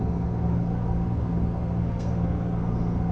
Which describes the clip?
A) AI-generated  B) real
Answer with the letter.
A